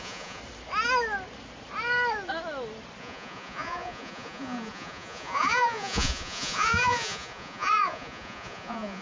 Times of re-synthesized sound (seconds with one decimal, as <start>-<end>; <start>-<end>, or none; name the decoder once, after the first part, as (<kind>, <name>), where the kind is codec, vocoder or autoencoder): 0.0-0.4 (vocoder, Vocos); 3.0-9.0